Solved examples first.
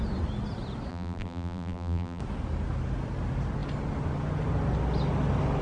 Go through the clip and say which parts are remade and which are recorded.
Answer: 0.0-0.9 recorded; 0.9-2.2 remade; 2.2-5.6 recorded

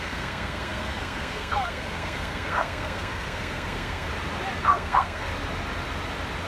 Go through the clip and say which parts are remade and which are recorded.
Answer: 0.0-4.1 remade; 4.1-4.6 recorded; 4.6-5.3 remade; 5.3-6.5 recorded

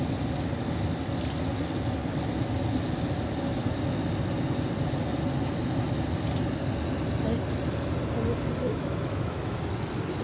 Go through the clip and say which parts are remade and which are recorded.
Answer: 0.0-8.6 recorded; 8.6-9.6 remade; 9.6-10.2 recorded

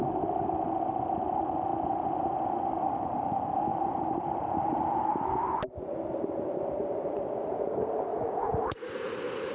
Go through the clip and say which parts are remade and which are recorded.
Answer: 0.0-8.1 recorded; 8.1-9.5 remade

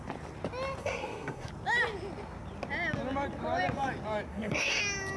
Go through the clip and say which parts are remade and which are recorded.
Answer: 0.0-0.8 recorded; 0.8-1.5 remade; 1.5-4.3 recorded; 4.3-4.8 remade; 4.8-5.2 recorded

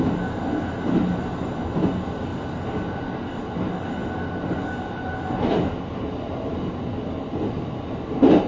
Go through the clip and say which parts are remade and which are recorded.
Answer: 0.0-8.5 recorded

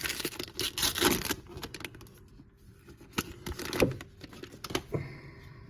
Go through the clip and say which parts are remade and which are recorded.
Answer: 0.0-5.7 recorded

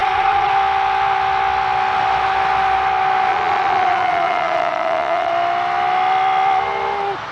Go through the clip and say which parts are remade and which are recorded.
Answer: 0.0-0.5 remade; 0.5-3.3 recorded; 3.3-5.3 remade; 5.3-7.3 recorded